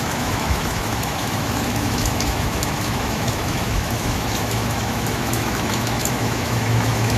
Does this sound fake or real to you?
fake